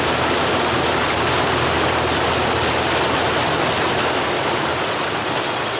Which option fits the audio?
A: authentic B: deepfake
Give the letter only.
A